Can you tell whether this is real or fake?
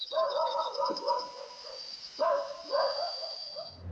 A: real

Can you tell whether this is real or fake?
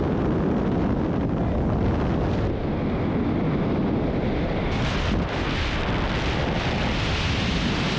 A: real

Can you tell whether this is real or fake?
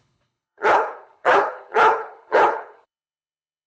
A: fake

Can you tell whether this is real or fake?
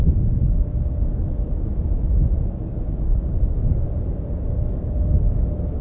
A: real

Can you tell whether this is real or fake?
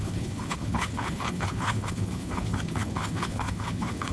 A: fake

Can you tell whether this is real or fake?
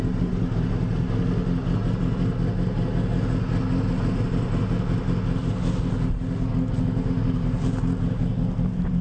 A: real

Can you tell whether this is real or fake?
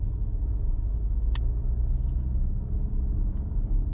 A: real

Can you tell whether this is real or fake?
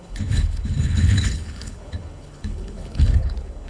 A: fake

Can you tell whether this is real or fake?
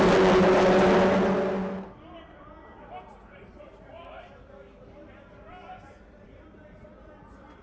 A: real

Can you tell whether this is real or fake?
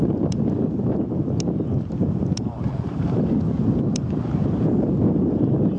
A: real